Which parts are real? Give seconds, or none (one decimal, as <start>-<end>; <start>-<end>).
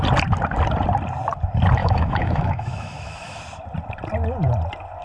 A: 0.0-1.8; 3.4-5.0